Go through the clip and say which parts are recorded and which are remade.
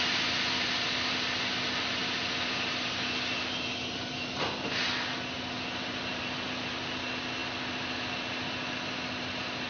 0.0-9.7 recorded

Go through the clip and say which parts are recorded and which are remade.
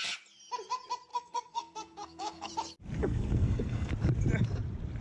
0.0-1.1 recorded; 1.1-2.5 remade; 2.5-3.0 recorded; 3.0-3.9 remade; 3.9-5.0 recorded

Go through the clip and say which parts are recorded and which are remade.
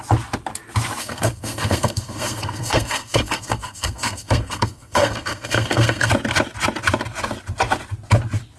0.0-1.0 recorded; 1.0-6.1 remade; 6.1-8.6 recorded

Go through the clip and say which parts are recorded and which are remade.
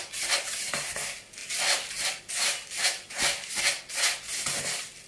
0.0-5.1 recorded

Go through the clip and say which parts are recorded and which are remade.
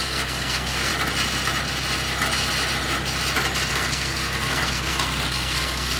0.0-0.9 remade; 0.9-3.7 recorded; 3.7-6.0 remade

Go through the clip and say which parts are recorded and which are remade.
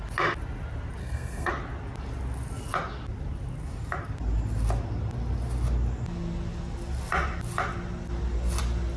0.0-1.0 recorded; 1.0-1.5 remade; 1.5-9.0 recorded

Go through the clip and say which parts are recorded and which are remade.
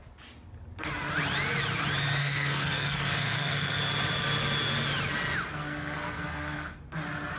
0.0-2.2 recorded; 2.2-3.8 remade; 3.8-5.5 recorded; 5.5-6.8 remade; 6.8-7.4 recorded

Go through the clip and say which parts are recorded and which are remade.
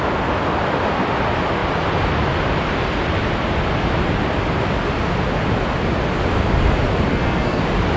0.0-7.1 recorded; 7.1-7.6 remade; 7.6-8.0 recorded